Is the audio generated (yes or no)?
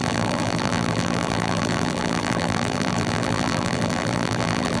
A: yes